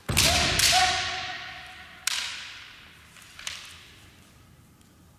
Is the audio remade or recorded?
recorded